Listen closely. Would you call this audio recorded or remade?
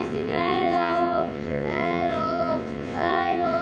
remade